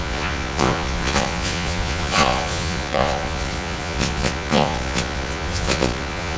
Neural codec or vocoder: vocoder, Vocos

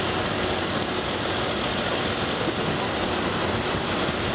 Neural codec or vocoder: none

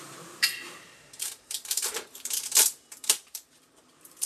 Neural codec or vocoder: vocoder, BigVGAN v2